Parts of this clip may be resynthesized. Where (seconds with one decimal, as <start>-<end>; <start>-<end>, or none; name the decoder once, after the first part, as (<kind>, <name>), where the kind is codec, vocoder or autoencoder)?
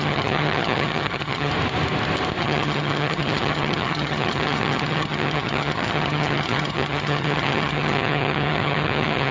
0.0-1.5 (vocoder, HiFi-GAN); 2.4-9.3